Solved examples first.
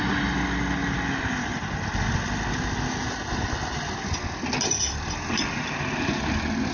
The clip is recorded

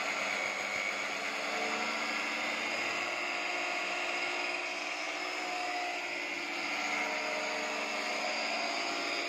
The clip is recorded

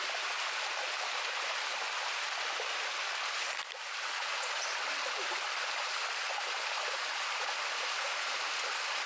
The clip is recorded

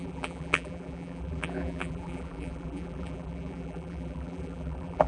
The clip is remade